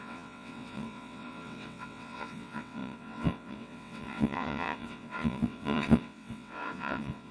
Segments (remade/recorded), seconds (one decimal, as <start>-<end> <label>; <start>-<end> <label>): 0.0-7.3 remade